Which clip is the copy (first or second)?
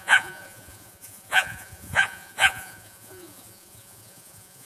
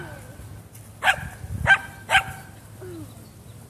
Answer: first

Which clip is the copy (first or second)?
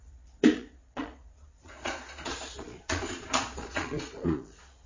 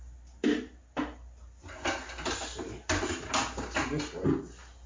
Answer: first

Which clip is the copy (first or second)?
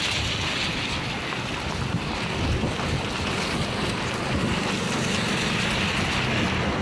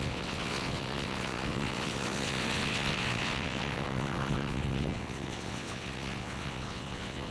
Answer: second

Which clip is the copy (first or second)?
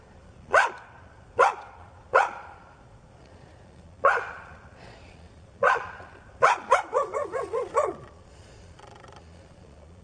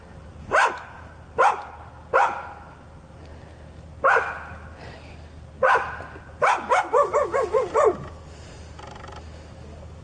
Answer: first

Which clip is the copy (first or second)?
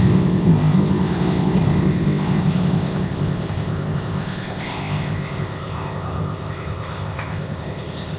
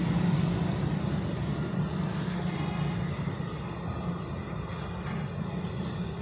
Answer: first